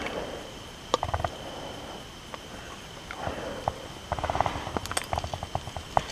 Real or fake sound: real